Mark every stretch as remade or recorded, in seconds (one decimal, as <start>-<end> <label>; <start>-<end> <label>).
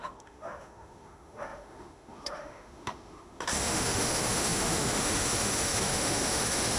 0.0-6.8 remade